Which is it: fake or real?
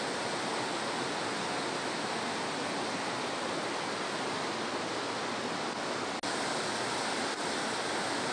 real